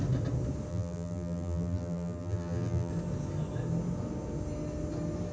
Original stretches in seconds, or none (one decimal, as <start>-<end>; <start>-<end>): 0.0-0.7; 2.9-5.3